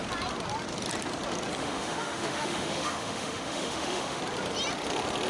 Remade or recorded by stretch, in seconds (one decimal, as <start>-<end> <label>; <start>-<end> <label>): 0.0-1.6 recorded; 1.6-4.2 remade; 4.2-5.3 recorded